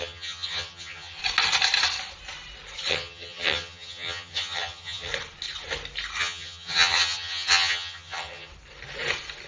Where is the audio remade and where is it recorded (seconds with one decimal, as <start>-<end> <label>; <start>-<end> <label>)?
0.0-1.2 remade; 1.2-2.9 recorded; 2.9-5.1 remade; 5.1-6.2 recorded; 6.2-8.5 remade; 8.5-9.5 recorded